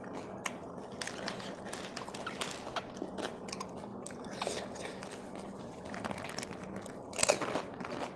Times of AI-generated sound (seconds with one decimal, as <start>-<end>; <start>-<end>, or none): none